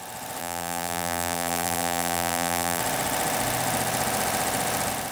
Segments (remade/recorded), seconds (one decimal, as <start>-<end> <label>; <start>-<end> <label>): 0.0-0.4 recorded; 0.4-2.8 remade; 2.8-5.1 recorded